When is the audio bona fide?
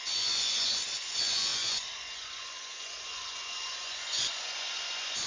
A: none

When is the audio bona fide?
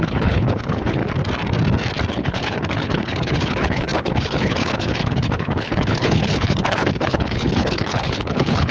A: 1.0-2.1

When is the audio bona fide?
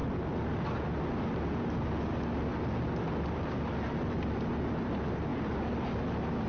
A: 0.0-6.5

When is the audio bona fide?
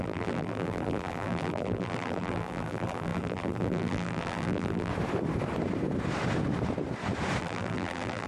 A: 4.9-7.4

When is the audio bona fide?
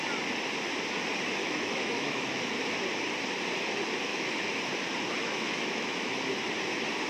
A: 0.0-1.4; 2.4-4.1; 4.6-5.2; 6.2-7.1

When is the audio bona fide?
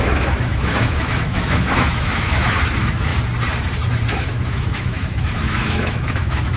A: 3.1-4.1